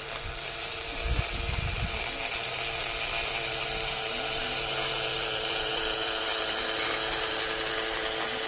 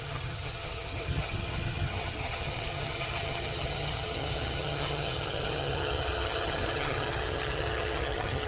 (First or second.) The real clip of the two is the first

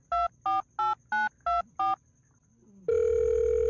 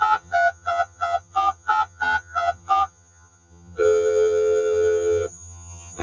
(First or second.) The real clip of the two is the first